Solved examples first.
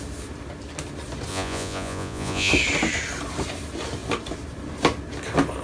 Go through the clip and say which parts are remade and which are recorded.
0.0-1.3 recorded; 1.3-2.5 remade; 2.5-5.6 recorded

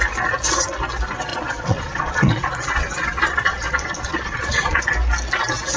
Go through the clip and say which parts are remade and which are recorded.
0.0-1.3 recorded; 1.3-4.8 remade; 4.8-5.8 recorded